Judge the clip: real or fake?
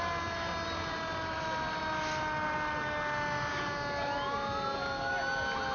real